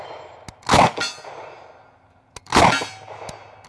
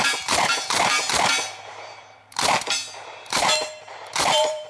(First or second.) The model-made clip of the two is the second